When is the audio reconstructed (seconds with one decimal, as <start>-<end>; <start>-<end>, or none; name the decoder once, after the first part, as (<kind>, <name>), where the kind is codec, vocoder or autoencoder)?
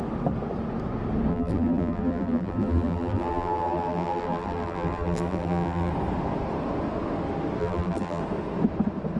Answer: 1.3-5.9 (vocoder, BigVGAN v2); 7.6-8.2